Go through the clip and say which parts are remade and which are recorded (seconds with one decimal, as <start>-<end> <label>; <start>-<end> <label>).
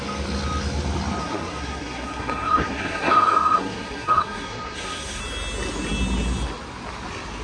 0.0-1.2 recorded; 1.2-5.2 remade; 5.2-7.4 recorded